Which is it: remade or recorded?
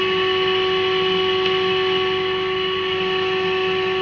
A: recorded